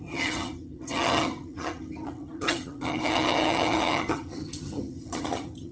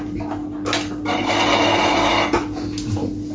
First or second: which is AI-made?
first